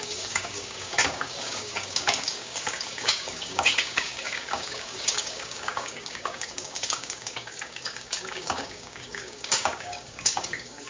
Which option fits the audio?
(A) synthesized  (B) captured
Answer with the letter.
A